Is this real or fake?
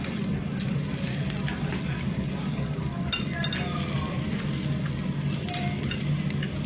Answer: real